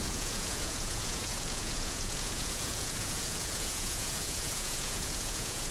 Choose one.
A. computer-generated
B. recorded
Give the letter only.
A